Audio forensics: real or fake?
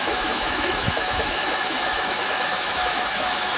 fake